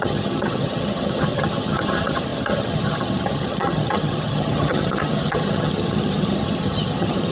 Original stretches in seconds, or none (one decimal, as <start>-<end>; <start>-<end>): none

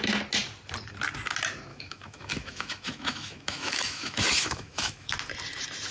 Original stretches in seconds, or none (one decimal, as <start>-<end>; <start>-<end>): 0.0-1.7; 5.1-5.9

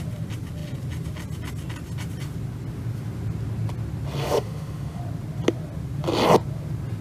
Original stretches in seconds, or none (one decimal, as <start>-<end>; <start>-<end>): 0.0-4.2; 5.0-7.0

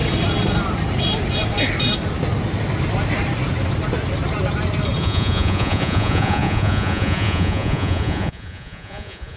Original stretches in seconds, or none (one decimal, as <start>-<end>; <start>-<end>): 0.0-5.0

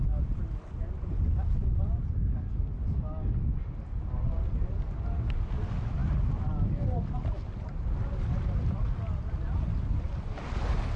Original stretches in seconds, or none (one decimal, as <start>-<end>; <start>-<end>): 0.0-11.0